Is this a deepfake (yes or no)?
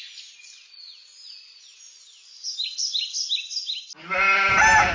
no